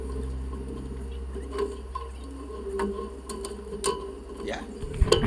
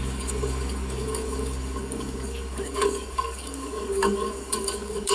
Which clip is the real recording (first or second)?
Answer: first